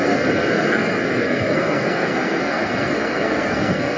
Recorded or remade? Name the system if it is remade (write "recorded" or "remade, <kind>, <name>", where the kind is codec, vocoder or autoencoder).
remade, codec, SNAC